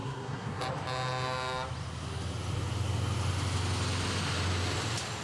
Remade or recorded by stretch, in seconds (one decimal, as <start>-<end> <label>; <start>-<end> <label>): 0.0-0.6 remade; 0.6-5.2 recorded